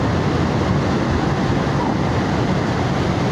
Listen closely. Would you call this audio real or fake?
real